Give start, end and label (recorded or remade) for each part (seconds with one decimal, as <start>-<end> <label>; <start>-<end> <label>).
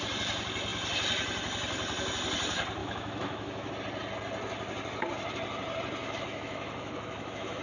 0.0-2.8 recorded; 2.8-3.7 remade; 3.7-6.0 recorded; 6.0-7.6 remade